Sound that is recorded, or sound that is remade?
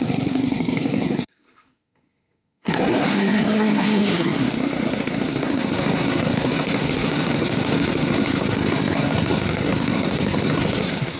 remade